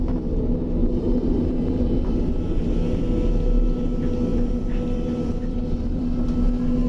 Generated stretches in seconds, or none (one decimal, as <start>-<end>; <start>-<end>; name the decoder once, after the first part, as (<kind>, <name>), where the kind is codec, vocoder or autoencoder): 0.8-2.3 (vocoder, BigVGAN v2); 4.3-6.0